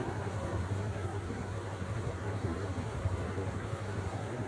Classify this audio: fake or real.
fake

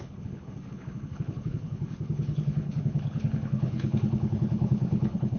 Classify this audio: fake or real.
fake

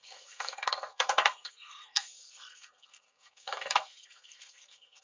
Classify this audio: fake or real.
fake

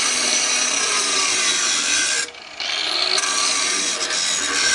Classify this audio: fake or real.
fake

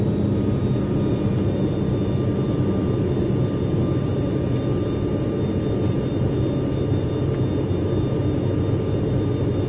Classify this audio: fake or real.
real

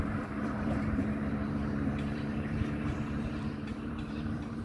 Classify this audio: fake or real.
fake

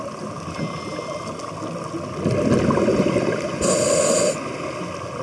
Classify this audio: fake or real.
real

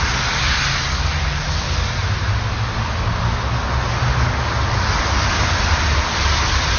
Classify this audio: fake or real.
real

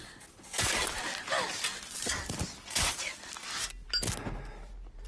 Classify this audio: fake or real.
real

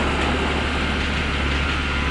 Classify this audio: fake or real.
real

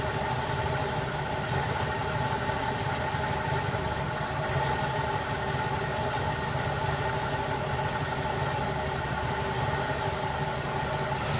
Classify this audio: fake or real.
real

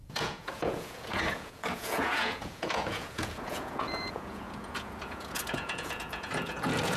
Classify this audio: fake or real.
fake